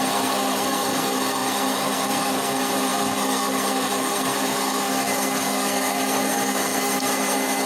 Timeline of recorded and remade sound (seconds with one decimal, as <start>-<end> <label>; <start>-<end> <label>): 0.0-7.7 remade